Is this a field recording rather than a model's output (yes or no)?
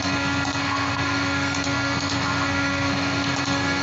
no